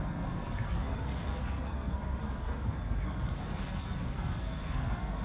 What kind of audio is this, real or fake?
fake